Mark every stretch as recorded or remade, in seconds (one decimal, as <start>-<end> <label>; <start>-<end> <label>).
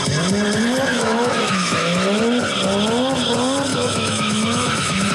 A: 0.0-0.9 recorded; 0.9-2.2 remade; 2.2-3.7 recorded; 3.7-5.1 remade